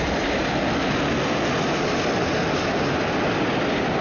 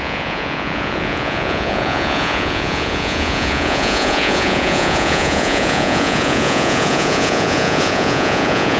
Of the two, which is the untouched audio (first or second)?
first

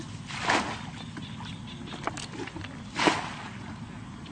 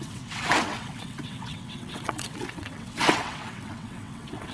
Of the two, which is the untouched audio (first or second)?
first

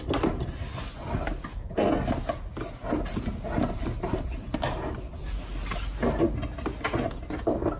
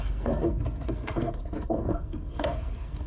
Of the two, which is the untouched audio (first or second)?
first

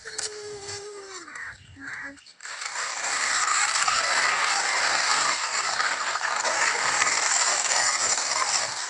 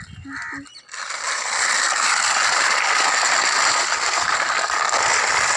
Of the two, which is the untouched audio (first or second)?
second